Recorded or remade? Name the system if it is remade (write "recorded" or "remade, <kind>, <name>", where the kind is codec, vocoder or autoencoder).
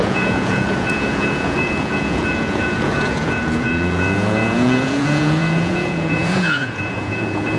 remade, vocoder, Vocos